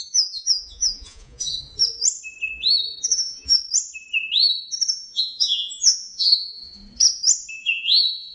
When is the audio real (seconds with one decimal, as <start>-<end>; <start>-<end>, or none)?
1.5-3.1; 3.5-4.9; 6.8-7.5